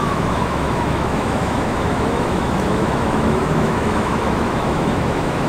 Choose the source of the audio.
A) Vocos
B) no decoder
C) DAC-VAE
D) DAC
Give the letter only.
C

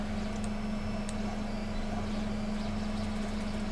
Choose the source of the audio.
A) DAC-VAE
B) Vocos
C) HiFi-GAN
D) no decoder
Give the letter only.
D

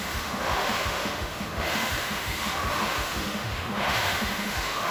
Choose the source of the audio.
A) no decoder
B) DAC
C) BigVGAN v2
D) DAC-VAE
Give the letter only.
D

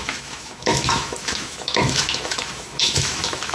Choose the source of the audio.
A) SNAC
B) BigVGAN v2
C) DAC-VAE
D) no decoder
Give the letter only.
C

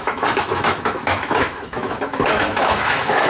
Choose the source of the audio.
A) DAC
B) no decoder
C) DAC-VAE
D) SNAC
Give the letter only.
C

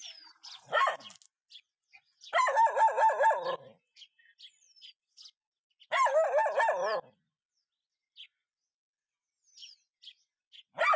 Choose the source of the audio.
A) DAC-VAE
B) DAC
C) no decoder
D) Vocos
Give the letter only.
C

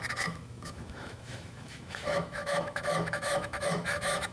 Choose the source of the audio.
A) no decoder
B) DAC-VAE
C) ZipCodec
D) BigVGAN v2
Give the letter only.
B